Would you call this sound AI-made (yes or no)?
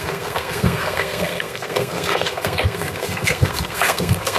yes